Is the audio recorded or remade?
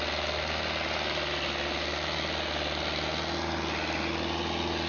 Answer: recorded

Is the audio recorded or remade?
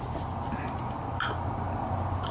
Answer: recorded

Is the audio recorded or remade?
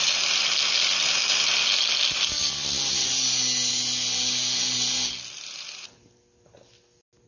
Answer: recorded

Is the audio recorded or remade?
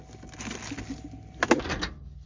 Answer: recorded